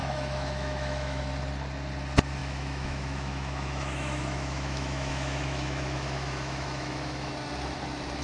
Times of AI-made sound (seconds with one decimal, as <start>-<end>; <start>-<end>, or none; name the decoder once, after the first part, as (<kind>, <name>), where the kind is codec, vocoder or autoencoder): 0.0-1.2 (autoencoder, DAC-VAE); 2.4-7.3